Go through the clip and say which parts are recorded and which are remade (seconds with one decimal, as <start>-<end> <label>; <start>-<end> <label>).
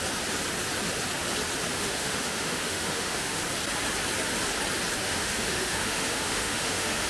0.0-1.7 recorded; 1.7-3.4 remade; 3.4-5.0 recorded; 5.0-7.1 remade